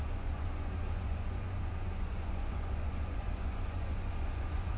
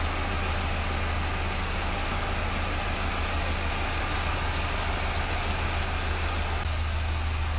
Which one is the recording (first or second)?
second